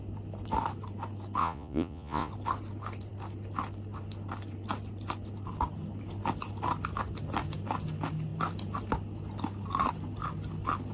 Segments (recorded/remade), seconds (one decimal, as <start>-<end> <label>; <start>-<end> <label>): 0.0-1.4 recorded; 1.4-2.3 remade; 2.3-10.9 recorded